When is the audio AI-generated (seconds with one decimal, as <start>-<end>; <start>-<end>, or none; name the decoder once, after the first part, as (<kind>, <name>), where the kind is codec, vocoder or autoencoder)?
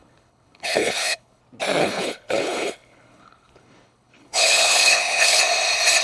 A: 0.0-1.4 (codec, HILCodec); 1.8-5.4